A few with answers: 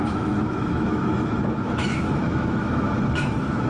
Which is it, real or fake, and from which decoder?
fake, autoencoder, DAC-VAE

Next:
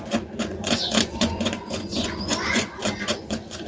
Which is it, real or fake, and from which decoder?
fake, vocoder, Vocos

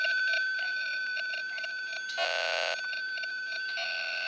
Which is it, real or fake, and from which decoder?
real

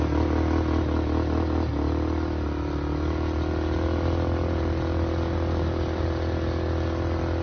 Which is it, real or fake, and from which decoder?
real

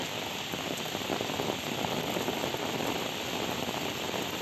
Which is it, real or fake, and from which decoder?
real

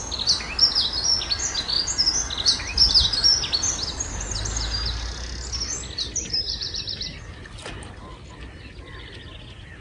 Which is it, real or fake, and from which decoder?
real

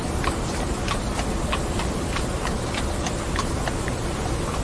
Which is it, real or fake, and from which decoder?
real